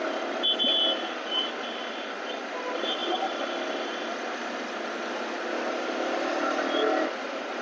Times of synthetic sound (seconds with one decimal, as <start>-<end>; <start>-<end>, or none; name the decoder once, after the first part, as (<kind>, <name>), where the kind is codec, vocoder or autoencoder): none